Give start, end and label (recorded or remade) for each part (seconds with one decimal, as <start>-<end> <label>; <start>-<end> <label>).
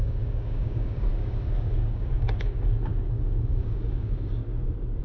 0.0-4.4 remade; 4.4-5.0 recorded